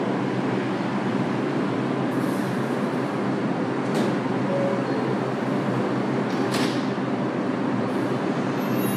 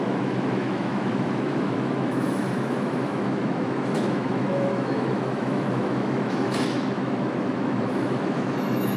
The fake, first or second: second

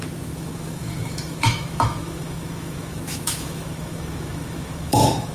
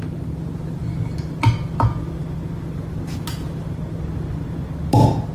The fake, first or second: first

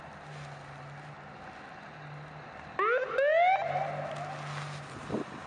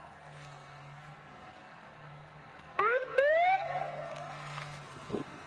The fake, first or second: second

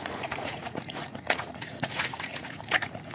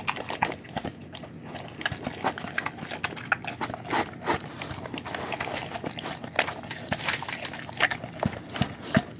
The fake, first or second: first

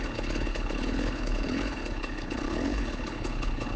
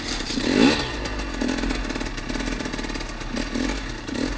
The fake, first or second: first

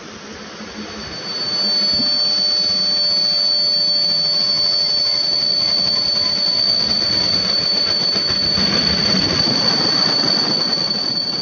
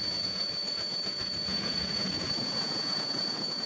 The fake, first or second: second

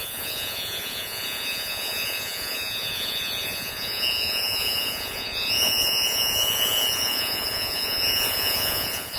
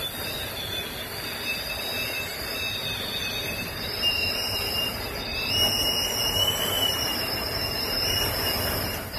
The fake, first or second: first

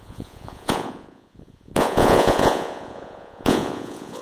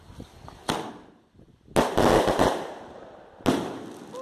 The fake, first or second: first